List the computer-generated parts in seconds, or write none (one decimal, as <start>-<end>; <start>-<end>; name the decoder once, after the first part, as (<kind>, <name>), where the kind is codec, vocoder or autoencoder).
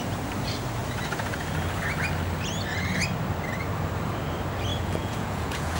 4.7-5.8 (vocoder, Vocos)